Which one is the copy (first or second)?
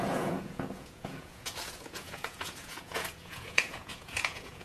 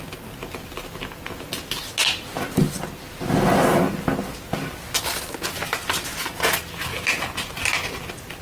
first